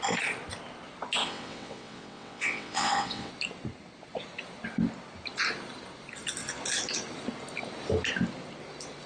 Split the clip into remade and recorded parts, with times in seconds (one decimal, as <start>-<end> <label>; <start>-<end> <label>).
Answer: 0.0-1.2 recorded; 1.2-3.3 remade; 3.3-9.1 recorded